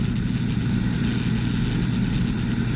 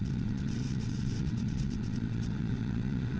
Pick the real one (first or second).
first